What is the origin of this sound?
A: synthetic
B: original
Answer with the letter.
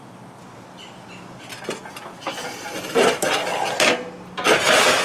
B